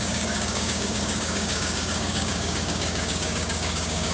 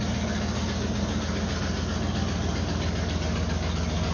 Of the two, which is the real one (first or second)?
second